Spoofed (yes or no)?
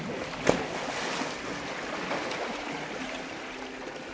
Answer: no